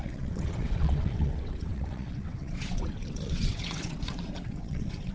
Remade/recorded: remade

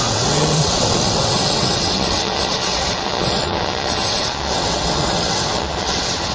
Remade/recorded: remade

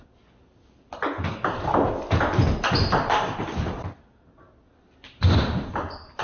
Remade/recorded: recorded